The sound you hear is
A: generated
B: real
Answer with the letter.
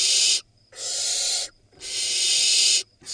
B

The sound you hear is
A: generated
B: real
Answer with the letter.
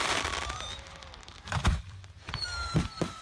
A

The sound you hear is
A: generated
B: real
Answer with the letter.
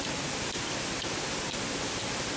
B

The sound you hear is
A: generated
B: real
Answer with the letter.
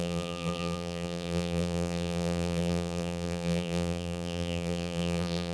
A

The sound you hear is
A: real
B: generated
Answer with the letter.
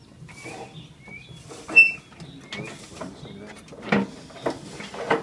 A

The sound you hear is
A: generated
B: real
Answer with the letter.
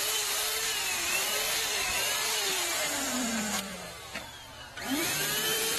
A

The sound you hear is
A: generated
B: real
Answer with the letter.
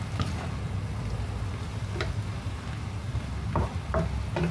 B